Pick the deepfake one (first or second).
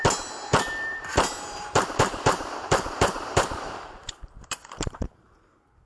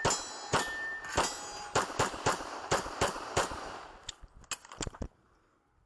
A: first